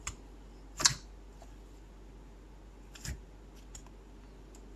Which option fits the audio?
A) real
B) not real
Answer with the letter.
A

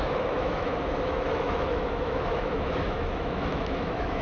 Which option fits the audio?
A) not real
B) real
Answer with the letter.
A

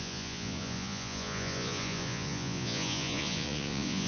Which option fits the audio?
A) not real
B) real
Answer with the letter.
A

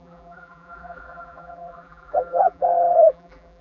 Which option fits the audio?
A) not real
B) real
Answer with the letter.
A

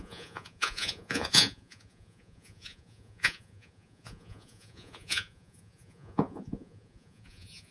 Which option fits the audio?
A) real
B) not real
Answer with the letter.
B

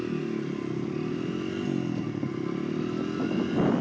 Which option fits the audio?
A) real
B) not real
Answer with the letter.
A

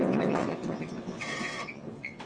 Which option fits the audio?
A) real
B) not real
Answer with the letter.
B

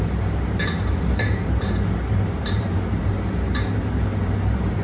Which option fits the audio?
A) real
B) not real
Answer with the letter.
B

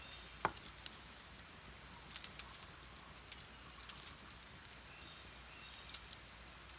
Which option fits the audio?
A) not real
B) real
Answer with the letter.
B